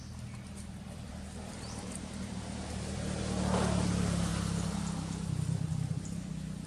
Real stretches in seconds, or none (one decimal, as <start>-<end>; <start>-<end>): 0.0-1.1; 3.2-6.7